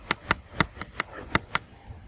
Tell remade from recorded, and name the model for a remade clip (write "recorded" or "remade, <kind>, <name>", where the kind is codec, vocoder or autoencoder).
recorded